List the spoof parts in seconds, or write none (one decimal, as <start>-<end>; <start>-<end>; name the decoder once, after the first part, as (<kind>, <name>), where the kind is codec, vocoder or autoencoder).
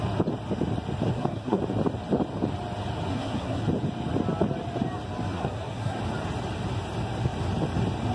1.1-1.6 (codec, SNAC); 3.1-3.6; 5.3-6.0